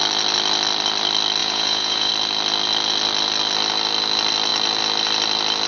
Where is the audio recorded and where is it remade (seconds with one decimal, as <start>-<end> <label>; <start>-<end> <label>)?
0.0-1.4 recorded; 1.4-2.1 remade; 2.1-5.7 recorded